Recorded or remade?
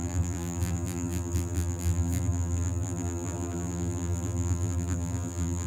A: remade